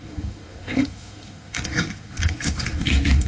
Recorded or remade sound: remade